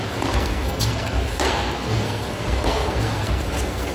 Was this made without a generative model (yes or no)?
no